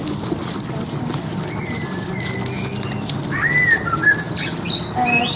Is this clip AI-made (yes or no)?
no